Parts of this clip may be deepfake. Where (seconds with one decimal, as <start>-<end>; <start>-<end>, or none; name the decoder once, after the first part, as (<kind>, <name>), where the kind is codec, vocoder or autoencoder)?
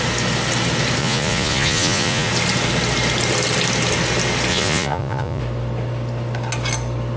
1.0-2.3 (vocoder, Vocos); 4.5-5.4